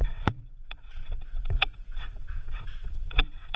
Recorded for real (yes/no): no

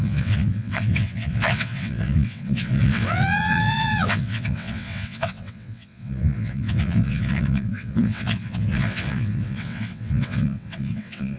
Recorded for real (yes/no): no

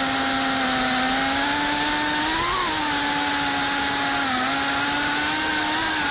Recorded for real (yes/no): yes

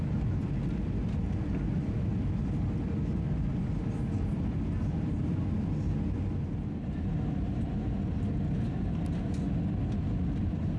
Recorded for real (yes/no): yes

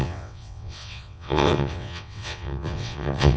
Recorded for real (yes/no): no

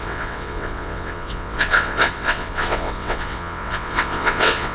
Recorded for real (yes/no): no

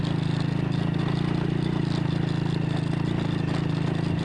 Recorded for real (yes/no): yes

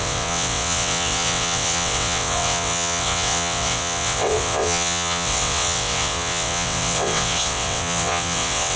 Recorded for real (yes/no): no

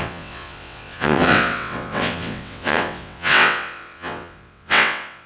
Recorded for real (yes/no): no